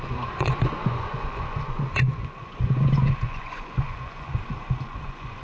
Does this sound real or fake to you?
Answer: fake